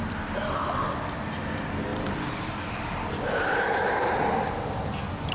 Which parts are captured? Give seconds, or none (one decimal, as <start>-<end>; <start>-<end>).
0.0-1.9; 4.5-5.3